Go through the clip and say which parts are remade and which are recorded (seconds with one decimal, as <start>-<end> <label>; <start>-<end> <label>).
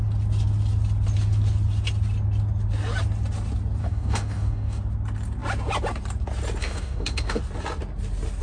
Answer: 0.0-3.8 recorded; 3.8-4.8 remade; 4.8-6.6 recorded; 6.6-7.4 remade; 7.4-8.4 recorded